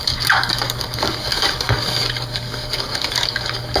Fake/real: fake